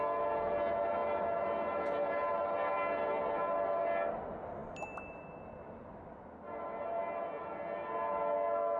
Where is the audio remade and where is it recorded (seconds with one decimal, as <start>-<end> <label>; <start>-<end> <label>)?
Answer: 0.0-8.8 recorded